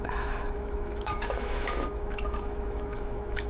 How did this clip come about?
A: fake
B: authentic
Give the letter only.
A